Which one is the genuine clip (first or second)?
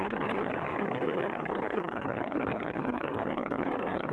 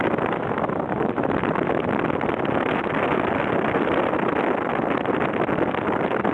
second